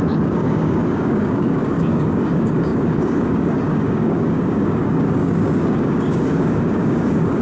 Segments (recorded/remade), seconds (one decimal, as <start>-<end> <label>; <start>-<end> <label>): 0.0-7.4 remade

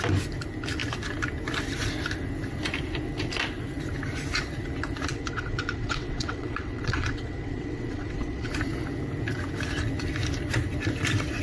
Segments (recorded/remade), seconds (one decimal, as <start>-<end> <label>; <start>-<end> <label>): 0.0-5.1 recorded; 5.1-8.5 remade; 8.5-11.4 recorded

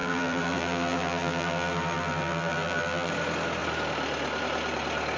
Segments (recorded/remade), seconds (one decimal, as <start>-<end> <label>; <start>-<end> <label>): 0.0-3.1 remade; 3.1-5.2 recorded

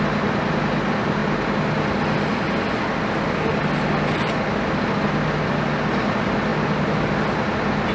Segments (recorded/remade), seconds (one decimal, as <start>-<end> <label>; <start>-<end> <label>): 0.0-7.9 recorded

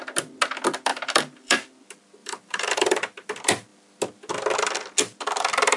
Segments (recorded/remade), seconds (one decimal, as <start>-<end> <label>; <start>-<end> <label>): 0.0-0.9 recorded; 0.9-1.7 remade; 1.7-2.2 recorded; 2.2-3.3 remade; 3.3-5.8 recorded

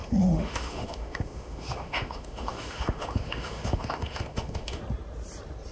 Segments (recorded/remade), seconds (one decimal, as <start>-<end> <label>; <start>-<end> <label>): 0.0-4.8 remade; 4.8-5.7 recorded

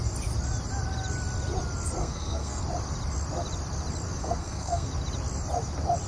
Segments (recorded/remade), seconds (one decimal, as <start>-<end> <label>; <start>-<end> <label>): 0.0-2.0 recorded; 2.0-2.6 remade; 2.6-4.2 recorded; 4.2-4.9 remade; 4.9-6.1 recorded

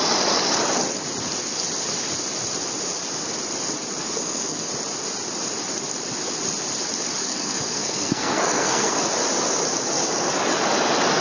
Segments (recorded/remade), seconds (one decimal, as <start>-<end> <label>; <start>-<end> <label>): 0.0-4.0 recorded; 4.0-4.7 remade; 4.7-7.2 recorded; 7.2-9.0 remade; 9.0-11.2 recorded